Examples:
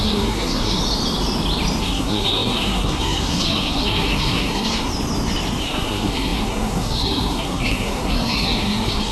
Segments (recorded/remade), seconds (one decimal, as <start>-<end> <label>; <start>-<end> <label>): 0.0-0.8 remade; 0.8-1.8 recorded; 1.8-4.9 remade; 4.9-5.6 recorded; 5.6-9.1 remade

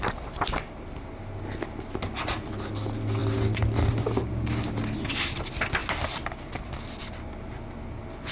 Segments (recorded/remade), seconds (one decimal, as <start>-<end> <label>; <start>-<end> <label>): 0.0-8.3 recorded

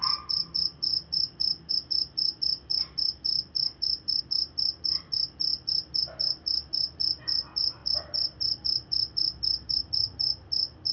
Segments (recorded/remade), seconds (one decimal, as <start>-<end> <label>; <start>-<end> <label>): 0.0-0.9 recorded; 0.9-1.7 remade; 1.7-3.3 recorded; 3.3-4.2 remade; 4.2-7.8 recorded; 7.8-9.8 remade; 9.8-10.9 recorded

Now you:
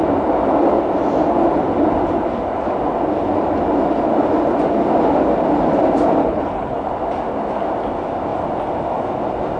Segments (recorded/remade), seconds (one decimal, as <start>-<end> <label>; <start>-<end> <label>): 0.0-6.2 recorded; 6.2-6.9 remade; 6.9-9.6 recorded